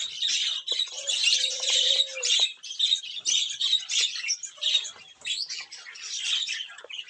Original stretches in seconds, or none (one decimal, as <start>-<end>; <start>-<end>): 0.0-1.2; 3.0-4.4; 5.5-7.1